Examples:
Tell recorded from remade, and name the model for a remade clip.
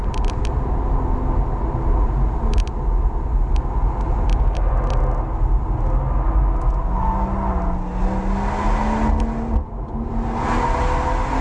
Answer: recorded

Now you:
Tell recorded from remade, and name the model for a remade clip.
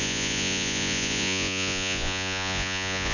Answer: remade, vocoder, Vocos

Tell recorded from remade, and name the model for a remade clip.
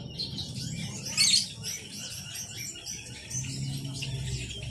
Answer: recorded